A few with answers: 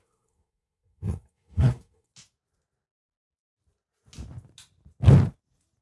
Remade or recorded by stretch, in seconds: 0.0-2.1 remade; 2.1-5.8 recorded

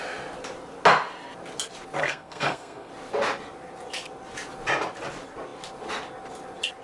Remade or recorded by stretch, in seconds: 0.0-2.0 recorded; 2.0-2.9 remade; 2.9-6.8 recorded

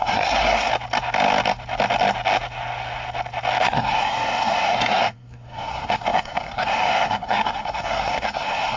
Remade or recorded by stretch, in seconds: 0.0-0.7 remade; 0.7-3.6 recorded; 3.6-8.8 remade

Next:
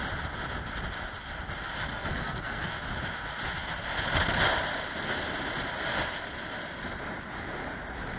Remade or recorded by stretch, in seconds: 0.0-1.9 recorded; 1.9-2.7 remade; 2.7-8.2 recorded

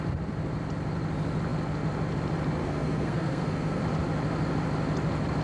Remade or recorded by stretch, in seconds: 0.0-2.6 recorded; 2.6-3.8 remade; 3.8-5.4 recorded